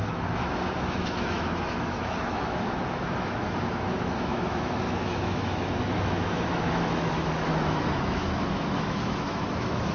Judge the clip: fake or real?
fake